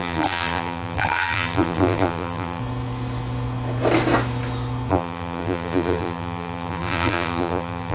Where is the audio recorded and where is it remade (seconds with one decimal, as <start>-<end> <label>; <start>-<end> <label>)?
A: 0.0-2.6 remade; 2.6-4.9 recorded; 4.9-7.9 remade